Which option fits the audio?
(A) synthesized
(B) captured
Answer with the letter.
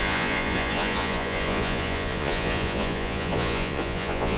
A